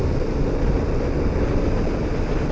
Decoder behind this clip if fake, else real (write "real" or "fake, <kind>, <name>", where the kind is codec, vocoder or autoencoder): real